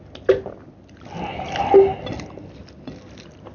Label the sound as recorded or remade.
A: recorded